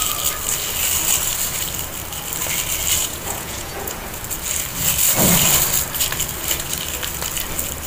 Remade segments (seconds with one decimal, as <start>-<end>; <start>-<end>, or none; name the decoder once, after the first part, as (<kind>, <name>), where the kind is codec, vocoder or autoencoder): 3.0-4.2 (vocoder, Vocos)

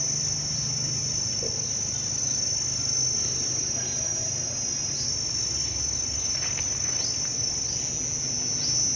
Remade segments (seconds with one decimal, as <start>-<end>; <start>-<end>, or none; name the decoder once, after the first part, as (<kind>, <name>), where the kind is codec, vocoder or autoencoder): none

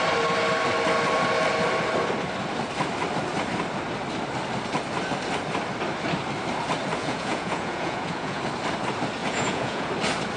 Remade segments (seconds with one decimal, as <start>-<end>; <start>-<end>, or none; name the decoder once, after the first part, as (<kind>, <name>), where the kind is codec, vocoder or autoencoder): 7.0-8.4 (vocoder, Vocos); 9.2-9.9

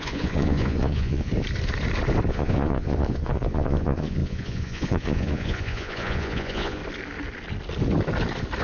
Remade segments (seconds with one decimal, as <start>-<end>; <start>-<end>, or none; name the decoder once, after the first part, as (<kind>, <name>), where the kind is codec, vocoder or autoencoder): 0.0-1.3 (vocoder, Vocos); 2.3-6.8

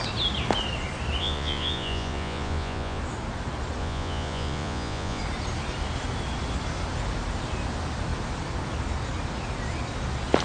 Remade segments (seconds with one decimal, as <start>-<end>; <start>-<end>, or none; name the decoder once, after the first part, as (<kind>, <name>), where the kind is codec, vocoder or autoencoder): 1.2-3.0 (vocoder, Vocos); 3.8-5.2